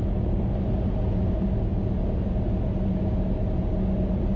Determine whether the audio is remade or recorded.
recorded